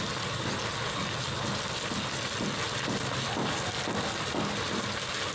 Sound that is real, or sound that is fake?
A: real